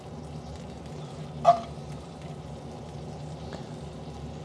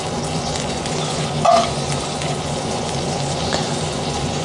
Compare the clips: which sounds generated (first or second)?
second